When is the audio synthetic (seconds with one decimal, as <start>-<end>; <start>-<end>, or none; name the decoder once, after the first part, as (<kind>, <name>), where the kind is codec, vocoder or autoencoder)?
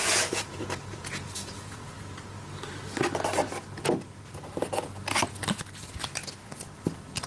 0.0-1.9 (vocoder, Vocos)